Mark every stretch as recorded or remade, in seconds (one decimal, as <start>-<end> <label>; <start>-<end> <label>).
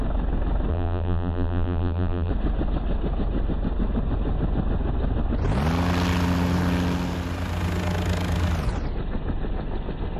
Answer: 0.0-0.7 recorded; 0.7-2.3 remade; 2.3-10.2 recorded